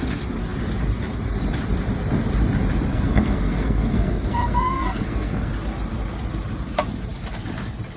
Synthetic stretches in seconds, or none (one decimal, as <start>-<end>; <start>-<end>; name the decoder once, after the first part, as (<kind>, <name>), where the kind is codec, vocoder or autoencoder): 2.9-5.5 (codec, SNAC)